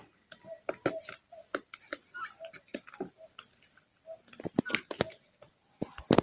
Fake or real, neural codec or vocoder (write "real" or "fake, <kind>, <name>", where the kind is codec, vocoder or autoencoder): real